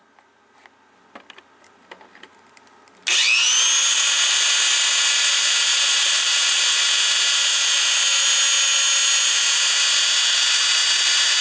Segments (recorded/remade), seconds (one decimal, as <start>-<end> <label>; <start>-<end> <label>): 0.0-3.8 recorded; 3.8-4.6 remade; 4.6-5.7 recorded; 5.7-6.5 remade; 6.5-11.4 recorded